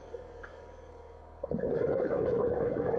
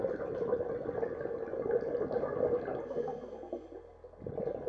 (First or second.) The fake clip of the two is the first